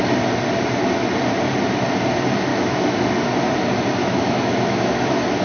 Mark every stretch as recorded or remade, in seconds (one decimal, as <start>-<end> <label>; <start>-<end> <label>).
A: 0.0-2.5 recorded; 2.5-3.0 remade; 3.0-4.0 recorded; 4.0-4.9 remade; 4.9-5.4 recorded